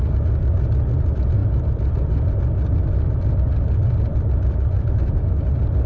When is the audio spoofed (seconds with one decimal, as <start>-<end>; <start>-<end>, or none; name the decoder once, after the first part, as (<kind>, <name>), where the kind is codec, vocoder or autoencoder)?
none